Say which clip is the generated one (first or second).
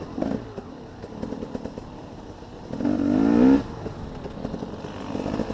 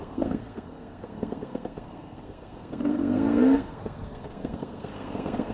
second